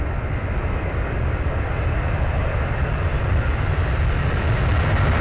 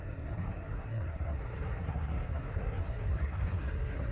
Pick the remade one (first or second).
second